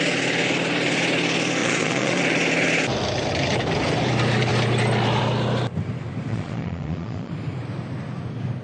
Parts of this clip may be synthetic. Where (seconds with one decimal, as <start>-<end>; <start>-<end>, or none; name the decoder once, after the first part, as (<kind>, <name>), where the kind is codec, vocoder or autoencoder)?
1.6-2.2 (vocoder, Vocos); 6.3-7.3